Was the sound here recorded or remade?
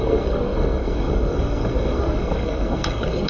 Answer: remade